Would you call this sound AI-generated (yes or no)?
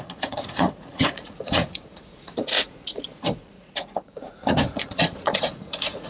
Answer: yes